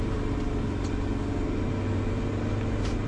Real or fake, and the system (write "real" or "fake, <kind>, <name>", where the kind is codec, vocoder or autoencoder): real